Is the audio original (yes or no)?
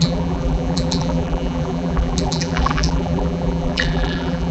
no